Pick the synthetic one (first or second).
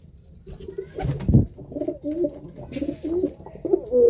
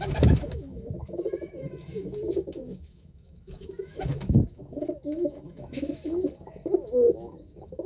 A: second